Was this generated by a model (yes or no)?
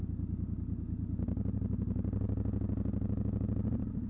no